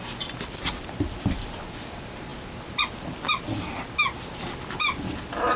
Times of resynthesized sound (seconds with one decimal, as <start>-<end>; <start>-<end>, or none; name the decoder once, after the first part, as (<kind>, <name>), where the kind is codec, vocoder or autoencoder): none